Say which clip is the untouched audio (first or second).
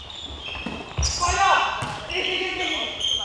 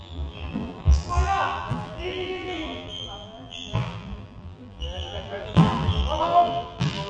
first